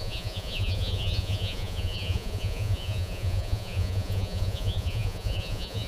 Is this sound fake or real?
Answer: fake